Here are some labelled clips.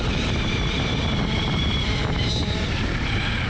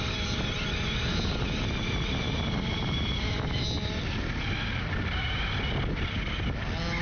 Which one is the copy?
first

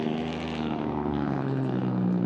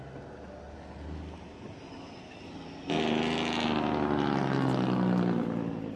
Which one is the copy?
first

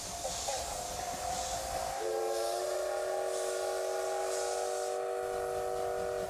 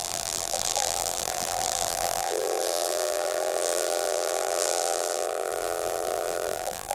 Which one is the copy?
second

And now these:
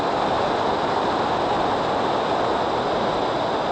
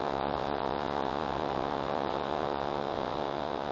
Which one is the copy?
second